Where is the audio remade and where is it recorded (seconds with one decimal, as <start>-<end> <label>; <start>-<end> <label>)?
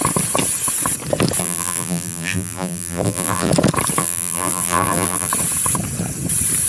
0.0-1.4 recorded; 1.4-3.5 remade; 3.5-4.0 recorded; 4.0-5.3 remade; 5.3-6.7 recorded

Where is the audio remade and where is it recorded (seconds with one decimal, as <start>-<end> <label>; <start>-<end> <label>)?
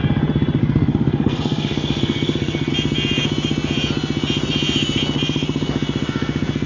0.0-0.6 recorded; 0.6-2.7 remade; 2.7-6.7 recorded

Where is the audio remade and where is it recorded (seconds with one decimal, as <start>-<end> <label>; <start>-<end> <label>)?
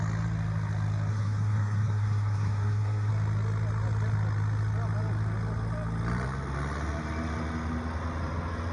0.0-1.1 recorded; 1.1-3.1 remade; 3.1-8.7 recorded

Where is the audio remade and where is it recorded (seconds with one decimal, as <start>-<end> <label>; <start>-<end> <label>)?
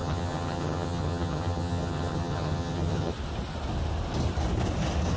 0.0-3.1 remade; 3.1-5.2 recorded